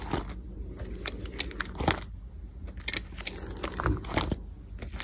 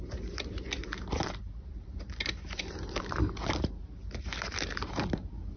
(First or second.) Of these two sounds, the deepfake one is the second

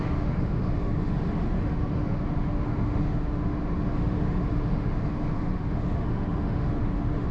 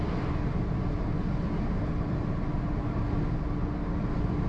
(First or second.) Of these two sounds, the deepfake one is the first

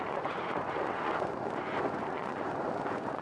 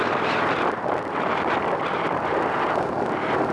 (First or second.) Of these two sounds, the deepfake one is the first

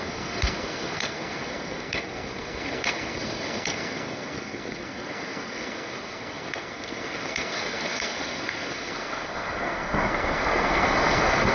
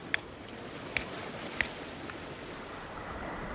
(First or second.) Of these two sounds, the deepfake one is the first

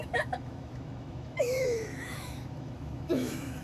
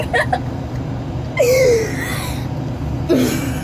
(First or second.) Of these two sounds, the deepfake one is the first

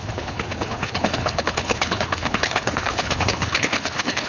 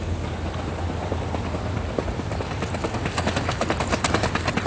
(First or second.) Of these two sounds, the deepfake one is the first